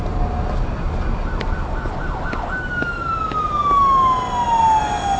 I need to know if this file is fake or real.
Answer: real